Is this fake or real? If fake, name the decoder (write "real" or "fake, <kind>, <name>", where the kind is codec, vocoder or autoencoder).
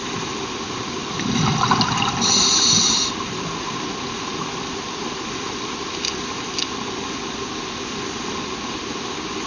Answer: real